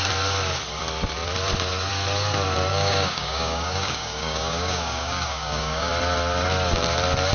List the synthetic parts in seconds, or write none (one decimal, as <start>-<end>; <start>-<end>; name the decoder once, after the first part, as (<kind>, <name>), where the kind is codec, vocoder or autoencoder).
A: 2.7-5.9 (codec, DAC)

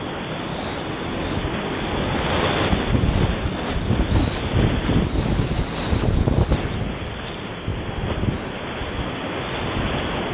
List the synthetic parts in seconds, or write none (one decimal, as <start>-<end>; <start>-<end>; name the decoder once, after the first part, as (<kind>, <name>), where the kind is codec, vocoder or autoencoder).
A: none

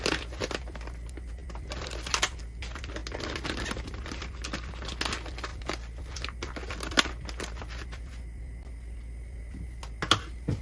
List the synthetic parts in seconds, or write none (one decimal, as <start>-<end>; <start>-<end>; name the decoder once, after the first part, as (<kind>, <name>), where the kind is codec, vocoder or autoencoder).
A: none

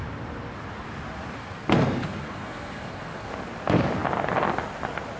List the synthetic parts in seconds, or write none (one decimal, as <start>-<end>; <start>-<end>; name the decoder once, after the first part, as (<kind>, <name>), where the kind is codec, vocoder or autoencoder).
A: 1.4-3.3 (codec, SNAC)

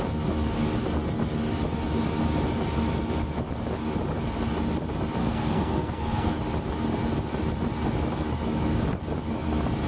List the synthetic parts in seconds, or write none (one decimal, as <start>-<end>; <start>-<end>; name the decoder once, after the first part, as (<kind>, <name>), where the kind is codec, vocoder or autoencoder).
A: 5.2-6.4 (codec, SNAC)